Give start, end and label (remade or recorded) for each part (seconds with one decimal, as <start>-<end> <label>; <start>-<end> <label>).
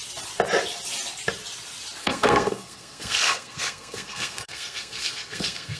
0.0-2.0 recorded; 2.0-5.8 remade